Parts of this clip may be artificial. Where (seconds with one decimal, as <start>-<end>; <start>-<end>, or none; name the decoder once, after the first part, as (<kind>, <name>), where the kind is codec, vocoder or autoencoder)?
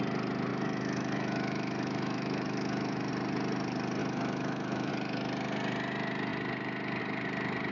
0.5-3.1 (autoencoder, DAC-VAE); 4.0-4.9